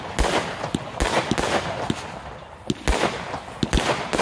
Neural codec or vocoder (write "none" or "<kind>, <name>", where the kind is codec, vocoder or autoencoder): none